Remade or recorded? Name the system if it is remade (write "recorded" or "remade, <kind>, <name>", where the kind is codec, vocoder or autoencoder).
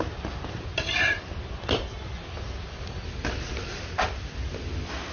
recorded